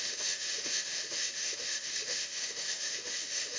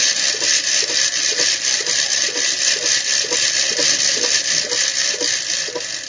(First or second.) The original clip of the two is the second